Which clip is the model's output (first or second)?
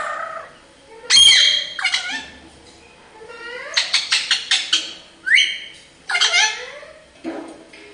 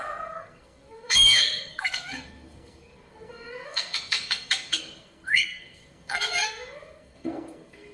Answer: second